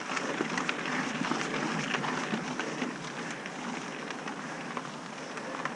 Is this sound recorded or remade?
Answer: recorded